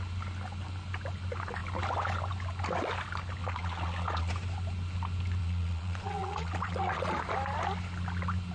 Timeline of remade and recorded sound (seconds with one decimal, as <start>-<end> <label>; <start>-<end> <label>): 0.0-3.4 recorded; 3.4-4.3 remade; 4.3-5.4 recorded; 5.4-7.2 remade; 7.2-8.5 recorded